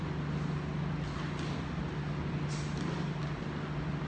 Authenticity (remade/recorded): recorded